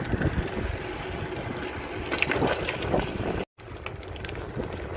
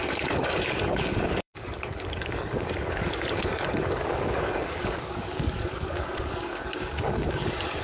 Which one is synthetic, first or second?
second